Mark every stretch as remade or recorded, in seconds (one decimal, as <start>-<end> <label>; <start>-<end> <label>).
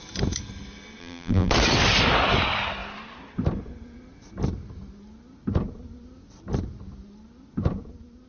0.0-1.0 recorded; 1.0-1.5 remade; 1.5-8.3 recorded